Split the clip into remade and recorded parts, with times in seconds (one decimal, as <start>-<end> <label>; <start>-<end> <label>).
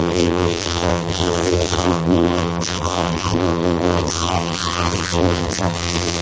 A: 0.0-6.2 remade